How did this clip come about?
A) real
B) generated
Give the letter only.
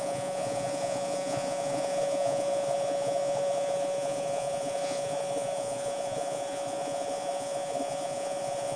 B